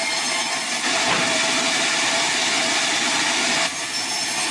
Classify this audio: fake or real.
real